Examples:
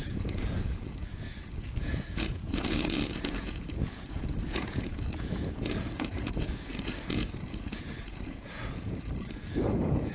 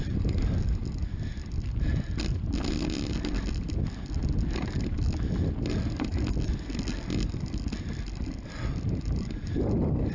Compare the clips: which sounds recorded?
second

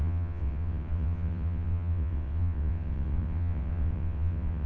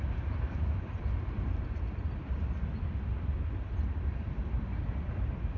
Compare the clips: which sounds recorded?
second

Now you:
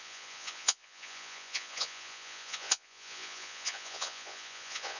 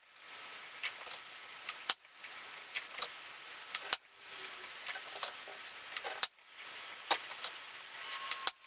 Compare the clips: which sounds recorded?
second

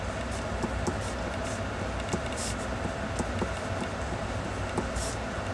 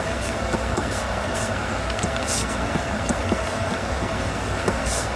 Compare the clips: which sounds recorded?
first